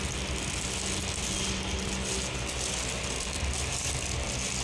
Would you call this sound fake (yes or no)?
no